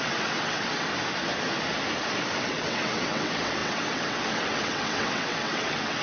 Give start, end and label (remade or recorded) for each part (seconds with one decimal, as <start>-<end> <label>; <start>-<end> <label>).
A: 0.0-0.9 remade; 0.9-2.4 recorded; 2.4-6.0 remade